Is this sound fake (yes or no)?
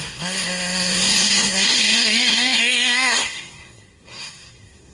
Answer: yes